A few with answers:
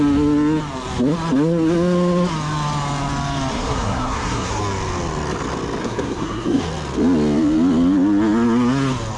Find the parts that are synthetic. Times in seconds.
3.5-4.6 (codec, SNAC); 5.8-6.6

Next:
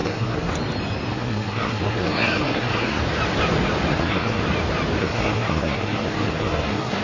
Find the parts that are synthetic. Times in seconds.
0.0-0.5 (codec, SNAC); 1.1-3.0; 3.9-4.4; 5.0-7.0

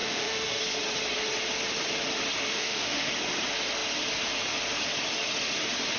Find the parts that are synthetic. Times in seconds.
0.0-0.6 (autoencoder, DAC-VAE); 2.5-3.1